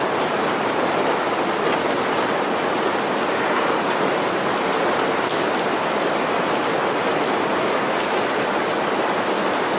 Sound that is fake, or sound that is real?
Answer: real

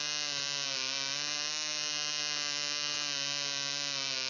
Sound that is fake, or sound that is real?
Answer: real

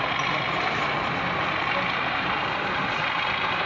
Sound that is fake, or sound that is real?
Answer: real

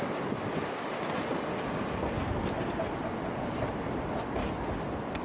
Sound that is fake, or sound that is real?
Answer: real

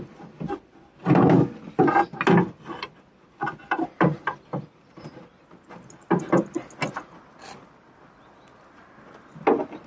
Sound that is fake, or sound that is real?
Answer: real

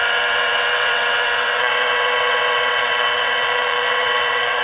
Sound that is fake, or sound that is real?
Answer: fake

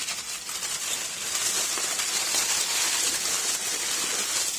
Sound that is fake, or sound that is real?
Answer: real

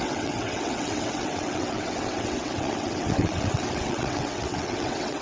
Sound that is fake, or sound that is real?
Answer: fake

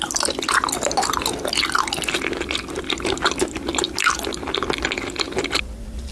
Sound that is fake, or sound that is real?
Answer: real